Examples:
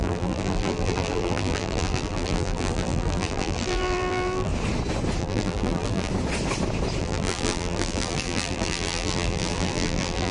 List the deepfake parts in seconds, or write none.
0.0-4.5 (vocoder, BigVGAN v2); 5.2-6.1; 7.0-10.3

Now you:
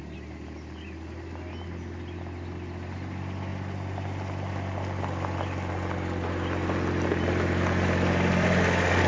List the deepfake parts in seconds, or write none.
none

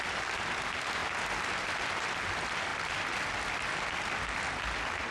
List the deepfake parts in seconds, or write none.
none

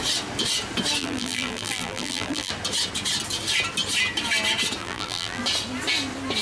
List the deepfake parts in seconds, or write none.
1.0-2.5 (vocoder, BigVGAN v2); 4.8-5.4

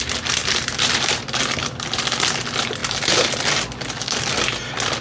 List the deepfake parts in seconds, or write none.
0.4-1.2 (vocoder, BigVGAN v2)